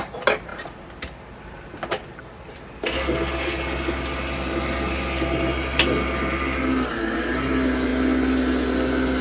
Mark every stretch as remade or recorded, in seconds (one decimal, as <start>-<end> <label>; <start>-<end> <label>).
0.0-9.2 recorded